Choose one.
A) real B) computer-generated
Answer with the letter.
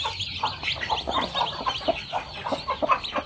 A